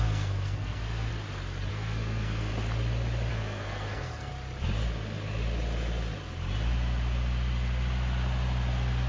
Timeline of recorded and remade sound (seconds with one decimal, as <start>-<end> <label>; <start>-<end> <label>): 0.0-1.1 remade; 1.1-1.7 recorded; 1.7-2.5 remade; 2.5-3.3 recorded; 3.3-4.3 remade; 4.3-9.1 recorded